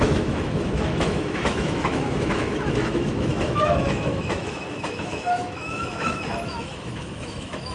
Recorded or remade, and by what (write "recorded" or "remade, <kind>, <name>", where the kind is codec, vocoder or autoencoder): remade, autoencoder, DAC-VAE